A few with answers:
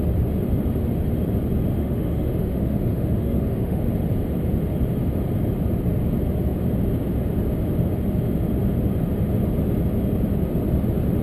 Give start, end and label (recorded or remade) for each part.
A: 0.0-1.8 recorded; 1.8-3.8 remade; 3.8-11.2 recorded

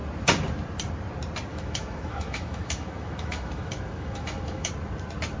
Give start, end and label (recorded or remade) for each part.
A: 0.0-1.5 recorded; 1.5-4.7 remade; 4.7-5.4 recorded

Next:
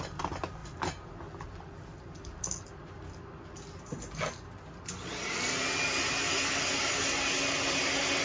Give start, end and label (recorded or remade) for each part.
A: 0.0-8.2 recorded